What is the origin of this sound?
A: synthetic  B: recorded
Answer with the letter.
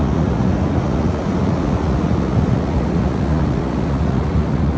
A